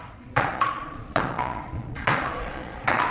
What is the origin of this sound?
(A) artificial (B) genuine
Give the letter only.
A